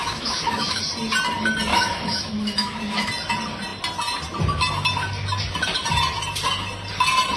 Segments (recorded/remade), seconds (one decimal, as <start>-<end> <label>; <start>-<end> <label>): 0.0-0.8 remade; 0.8-1.7 recorded; 1.7-3.1 remade; 3.1-7.4 recorded